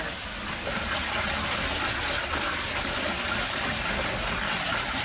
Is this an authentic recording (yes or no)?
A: yes